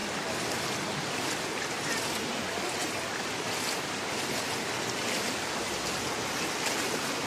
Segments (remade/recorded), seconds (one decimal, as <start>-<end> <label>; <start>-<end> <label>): 0.0-7.3 recorded